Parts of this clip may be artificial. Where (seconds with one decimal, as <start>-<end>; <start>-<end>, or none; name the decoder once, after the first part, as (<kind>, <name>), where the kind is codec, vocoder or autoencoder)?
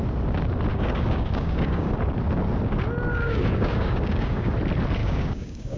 0.7-1.9 (codec, DAC); 3.1-4.5; 5.0-5.8